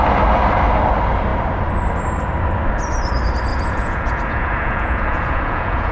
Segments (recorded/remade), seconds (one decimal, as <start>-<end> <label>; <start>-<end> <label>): 0.0-3.5 recorded; 3.5-5.9 remade